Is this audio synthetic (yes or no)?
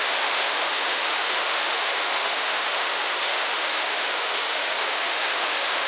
yes